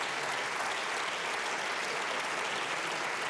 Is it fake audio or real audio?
real